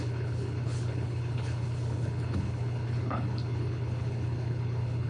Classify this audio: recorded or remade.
remade